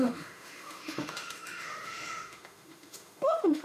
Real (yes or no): no